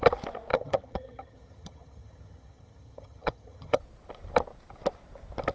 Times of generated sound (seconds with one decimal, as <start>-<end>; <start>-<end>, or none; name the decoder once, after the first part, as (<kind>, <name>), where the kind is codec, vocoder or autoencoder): 0.5-3.8 (vocoder, HiFi-GAN)